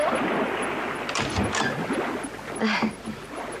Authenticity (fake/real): real